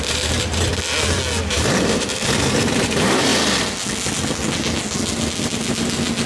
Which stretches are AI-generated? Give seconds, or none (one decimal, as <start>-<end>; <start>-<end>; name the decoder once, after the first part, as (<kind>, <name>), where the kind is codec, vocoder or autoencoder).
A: 0.0-0.7 (vocoder, BigVGAN v2); 1.5-3.3